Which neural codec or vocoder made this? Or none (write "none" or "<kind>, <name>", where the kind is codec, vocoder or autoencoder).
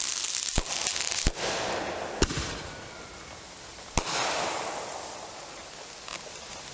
none